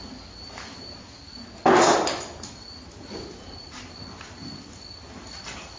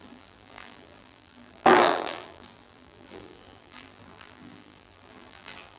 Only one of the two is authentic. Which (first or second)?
first